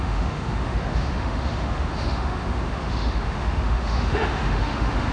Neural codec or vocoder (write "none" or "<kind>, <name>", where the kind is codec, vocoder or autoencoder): autoencoder, DAC-VAE